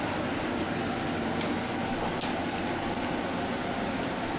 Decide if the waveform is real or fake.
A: real